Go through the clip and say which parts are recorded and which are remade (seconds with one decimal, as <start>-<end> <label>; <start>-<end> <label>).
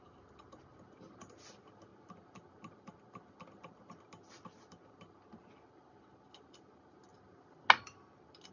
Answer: 0.0-8.5 recorded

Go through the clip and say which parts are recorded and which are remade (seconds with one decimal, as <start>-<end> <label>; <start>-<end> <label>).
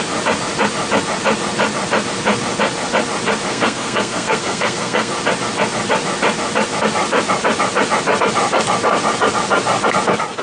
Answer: 0.0-3.5 recorded; 3.5-5.1 remade; 5.1-10.4 recorded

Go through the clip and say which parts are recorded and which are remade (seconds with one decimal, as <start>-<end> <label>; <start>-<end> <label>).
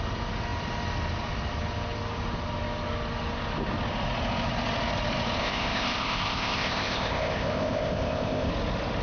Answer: 0.0-5.4 recorded; 5.4-8.5 remade; 8.5-9.0 recorded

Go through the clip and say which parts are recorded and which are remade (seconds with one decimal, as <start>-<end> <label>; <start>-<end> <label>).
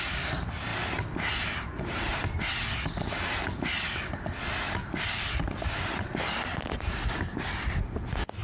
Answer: 0.0-8.4 recorded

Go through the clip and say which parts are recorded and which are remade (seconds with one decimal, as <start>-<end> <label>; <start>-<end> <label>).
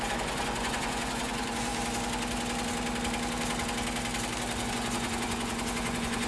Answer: 0.0-1.7 remade; 1.7-4.7 recorded; 4.7-6.3 remade